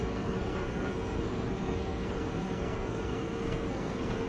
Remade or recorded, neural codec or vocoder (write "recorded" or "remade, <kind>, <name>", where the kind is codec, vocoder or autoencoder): remade, codec, SNAC